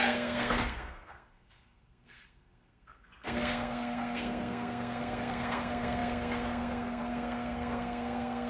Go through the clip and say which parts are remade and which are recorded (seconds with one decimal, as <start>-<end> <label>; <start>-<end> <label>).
0.0-8.5 remade